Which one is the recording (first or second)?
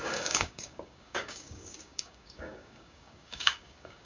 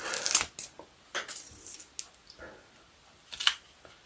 second